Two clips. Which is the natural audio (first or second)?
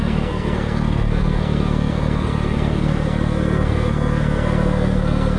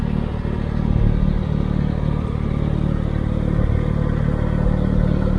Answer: second